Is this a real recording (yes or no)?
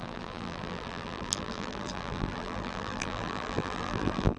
no